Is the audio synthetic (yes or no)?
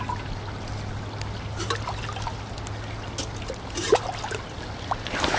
no